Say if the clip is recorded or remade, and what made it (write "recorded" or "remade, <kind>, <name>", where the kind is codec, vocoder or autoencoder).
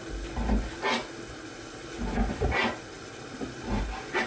recorded